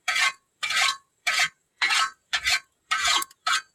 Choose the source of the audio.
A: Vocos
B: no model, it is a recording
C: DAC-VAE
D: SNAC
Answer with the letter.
A